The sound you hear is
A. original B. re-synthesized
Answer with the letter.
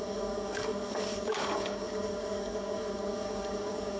B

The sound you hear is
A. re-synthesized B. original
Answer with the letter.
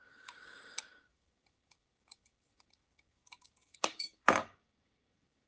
A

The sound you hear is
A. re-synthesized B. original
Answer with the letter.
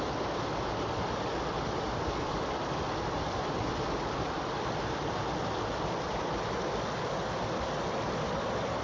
B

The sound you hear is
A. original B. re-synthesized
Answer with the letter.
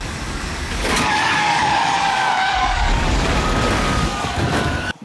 B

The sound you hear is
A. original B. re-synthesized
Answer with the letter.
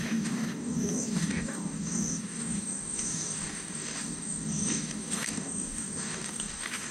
B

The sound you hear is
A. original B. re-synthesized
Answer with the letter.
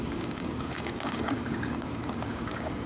B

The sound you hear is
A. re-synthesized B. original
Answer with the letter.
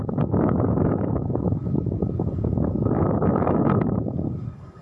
A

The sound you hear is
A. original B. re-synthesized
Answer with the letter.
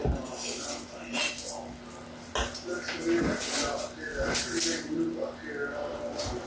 A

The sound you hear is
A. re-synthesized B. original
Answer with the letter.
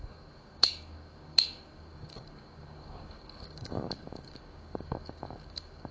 A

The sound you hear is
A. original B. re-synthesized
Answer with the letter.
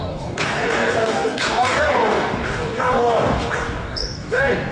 B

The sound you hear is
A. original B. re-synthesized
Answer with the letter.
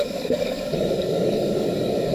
B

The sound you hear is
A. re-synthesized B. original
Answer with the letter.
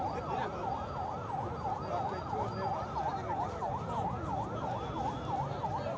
B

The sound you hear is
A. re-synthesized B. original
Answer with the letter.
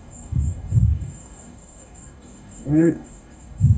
A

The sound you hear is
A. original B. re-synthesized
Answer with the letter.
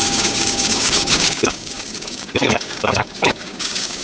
B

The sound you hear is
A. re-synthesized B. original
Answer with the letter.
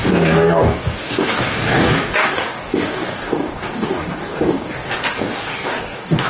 A